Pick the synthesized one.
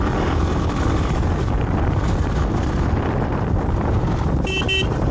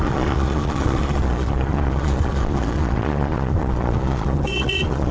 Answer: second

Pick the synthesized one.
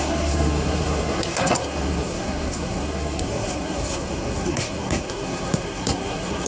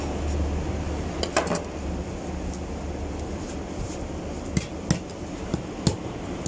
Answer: first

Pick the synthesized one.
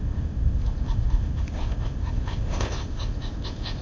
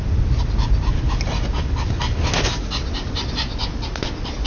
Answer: first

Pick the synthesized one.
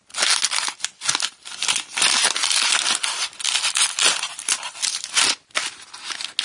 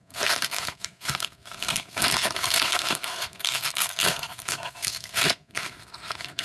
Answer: second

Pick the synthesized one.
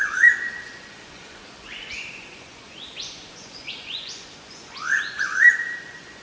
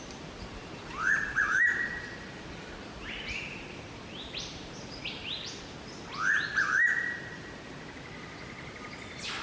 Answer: first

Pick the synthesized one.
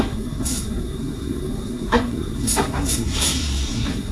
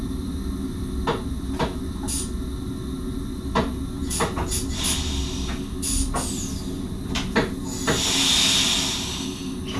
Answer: first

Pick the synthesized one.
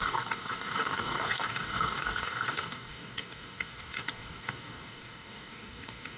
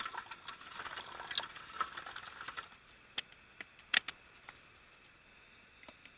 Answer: first